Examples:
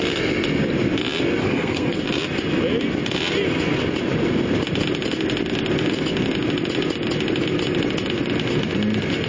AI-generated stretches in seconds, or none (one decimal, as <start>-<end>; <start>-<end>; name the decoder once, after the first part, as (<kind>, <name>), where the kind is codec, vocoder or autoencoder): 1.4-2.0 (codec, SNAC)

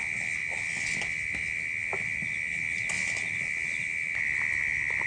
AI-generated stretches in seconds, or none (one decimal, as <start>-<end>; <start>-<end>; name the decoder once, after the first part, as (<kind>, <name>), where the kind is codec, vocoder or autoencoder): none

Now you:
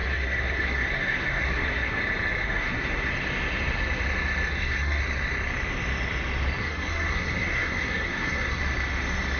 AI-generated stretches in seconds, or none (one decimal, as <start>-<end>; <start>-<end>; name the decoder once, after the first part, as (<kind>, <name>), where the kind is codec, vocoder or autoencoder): 0.0-2.0 (codec, SNAC); 2.4-3.1; 4.5-5.0; 6.6-8.6

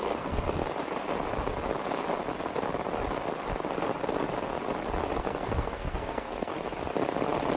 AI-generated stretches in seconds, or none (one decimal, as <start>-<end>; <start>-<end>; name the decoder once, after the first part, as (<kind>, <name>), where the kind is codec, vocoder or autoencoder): 0.0-0.6 (codec, SNAC); 5.2-6.5

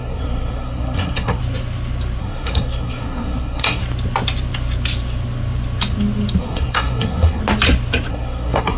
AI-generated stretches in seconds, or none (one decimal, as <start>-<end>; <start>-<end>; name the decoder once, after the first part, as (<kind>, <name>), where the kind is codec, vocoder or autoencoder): 0.0-1.4 (codec, SNAC); 2.2-3.8; 6.4-7.4; 8.1-8.8

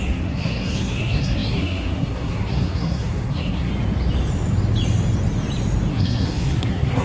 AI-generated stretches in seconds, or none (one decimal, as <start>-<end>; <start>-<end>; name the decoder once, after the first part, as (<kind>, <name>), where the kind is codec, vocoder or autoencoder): 0.0-3.7 (codec, SNAC); 5.9-7.0